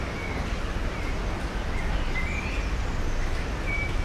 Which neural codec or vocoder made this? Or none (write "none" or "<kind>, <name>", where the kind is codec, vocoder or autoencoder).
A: none